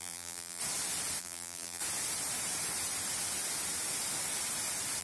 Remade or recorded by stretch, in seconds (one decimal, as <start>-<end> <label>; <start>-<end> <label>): 0.0-0.6 remade; 0.6-1.2 recorded; 1.2-1.8 remade; 1.8-5.0 recorded